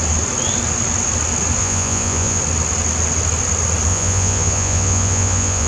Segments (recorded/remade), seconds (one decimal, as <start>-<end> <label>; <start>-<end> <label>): 0.0-1.6 recorded; 1.6-2.4 remade; 2.4-3.9 recorded; 3.9-5.7 remade